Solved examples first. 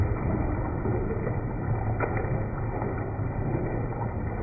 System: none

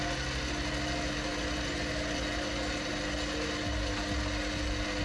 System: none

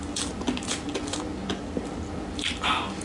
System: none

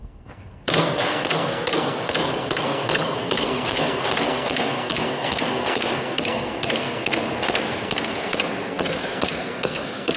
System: codec, SNAC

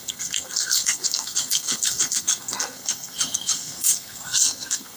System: codec, SNAC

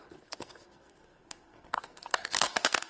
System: codec, SNAC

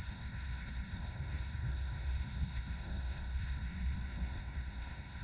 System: codec, SNAC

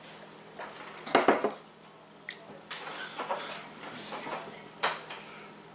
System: none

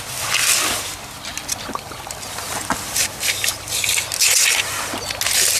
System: none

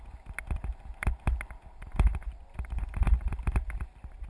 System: none